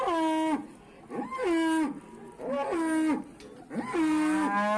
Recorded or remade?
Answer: recorded